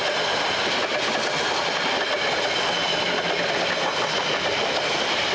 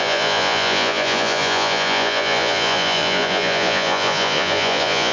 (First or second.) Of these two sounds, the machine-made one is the second